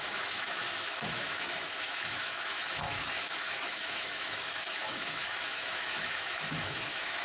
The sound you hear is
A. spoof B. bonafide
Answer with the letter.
A